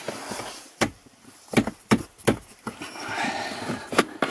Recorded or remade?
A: remade